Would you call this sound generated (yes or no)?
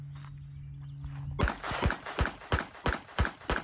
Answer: no